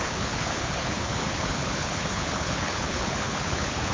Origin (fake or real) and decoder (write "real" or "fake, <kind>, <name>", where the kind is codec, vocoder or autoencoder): fake, codec, HILCodec